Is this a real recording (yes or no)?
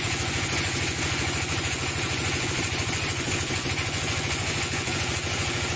no